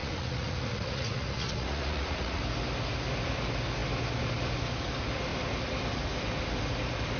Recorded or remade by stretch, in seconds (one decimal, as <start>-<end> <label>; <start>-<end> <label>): 0.0-2.4 remade; 2.4-7.2 recorded

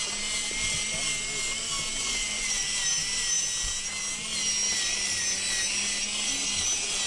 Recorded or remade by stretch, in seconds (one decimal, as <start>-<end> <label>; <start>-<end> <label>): 0.0-2.0 recorded; 2.0-2.6 remade; 2.6-7.1 recorded

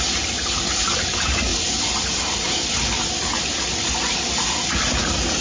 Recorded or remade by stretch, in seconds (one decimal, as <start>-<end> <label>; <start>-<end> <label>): 0.0-5.4 remade

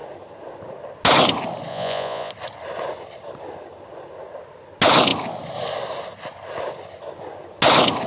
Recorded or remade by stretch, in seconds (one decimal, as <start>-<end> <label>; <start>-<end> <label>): 0.0-1.7 recorded; 1.7-2.3 remade; 2.3-8.1 recorded

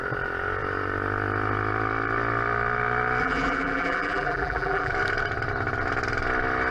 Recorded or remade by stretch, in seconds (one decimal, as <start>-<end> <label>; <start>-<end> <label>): 0.0-3.2 recorded; 3.2-4.9 remade; 4.9-6.7 recorded

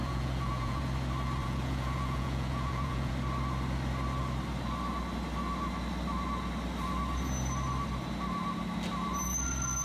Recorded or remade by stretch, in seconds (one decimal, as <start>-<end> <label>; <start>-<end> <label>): 0.0-0.8 remade; 0.8-1.4 recorded; 1.4-3.1 remade; 3.1-9.8 recorded

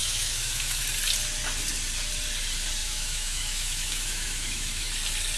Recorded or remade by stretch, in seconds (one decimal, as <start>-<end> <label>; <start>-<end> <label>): 0.0-0.8 remade; 0.8-2.8 recorded; 2.8-4.9 remade; 4.9-5.4 recorded